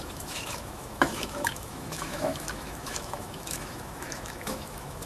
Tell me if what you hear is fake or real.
fake